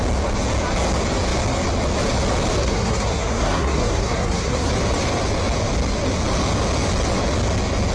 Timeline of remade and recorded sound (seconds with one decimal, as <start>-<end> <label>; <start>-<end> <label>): 0.0-2.6 recorded; 2.6-4.7 remade; 4.7-7.9 recorded